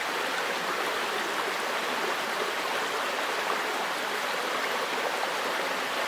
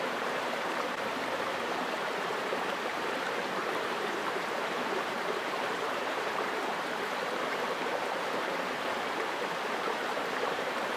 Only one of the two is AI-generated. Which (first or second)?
second